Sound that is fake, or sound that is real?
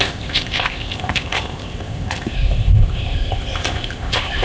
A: fake